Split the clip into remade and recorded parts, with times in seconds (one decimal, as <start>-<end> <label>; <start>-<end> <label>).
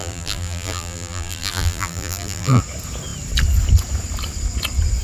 0.0-2.6 remade; 2.6-5.0 recorded